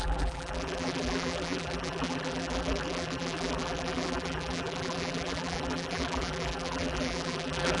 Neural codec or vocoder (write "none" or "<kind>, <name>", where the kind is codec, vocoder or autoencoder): vocoder, BigVGAN v2